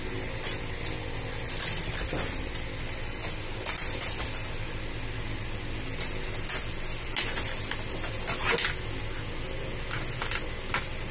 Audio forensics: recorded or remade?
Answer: recorded